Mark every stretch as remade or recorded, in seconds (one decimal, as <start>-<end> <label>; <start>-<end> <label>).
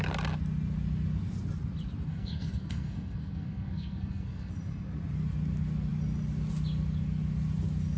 0.0-2.1 recorded; 2.1-4.5 remade; 4.5-8.0 recorded